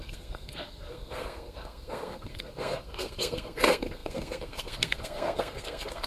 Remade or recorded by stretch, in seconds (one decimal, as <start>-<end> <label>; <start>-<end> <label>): 0.0-6.1 remade